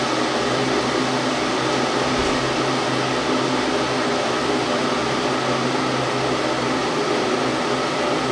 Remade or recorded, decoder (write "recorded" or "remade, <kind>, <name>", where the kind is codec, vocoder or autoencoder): recorded